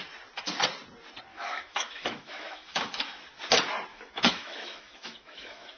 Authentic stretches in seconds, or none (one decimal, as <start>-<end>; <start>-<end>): 0.0-1.3; 3.2-3.9